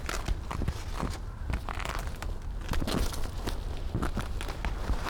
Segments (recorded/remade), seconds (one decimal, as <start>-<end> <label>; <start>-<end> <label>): 0.0-5.1 recorded